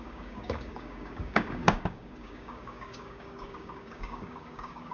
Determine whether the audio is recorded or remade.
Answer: remade